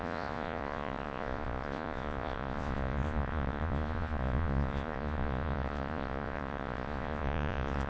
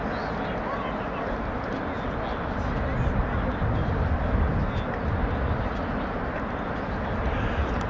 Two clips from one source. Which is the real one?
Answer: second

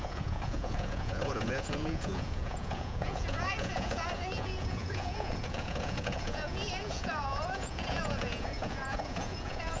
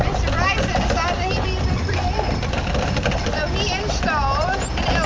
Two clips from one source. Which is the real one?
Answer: second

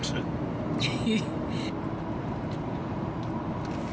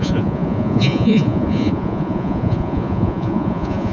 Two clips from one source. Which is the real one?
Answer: first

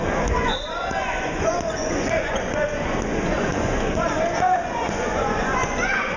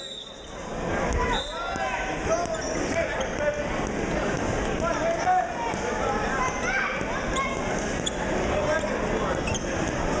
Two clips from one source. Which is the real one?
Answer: second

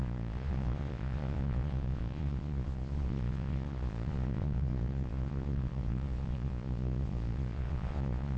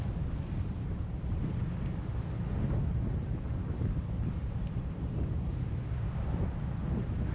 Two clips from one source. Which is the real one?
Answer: second